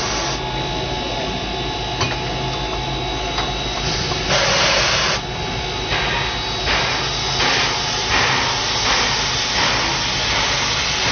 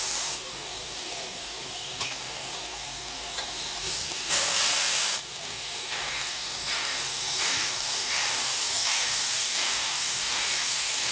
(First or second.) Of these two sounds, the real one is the first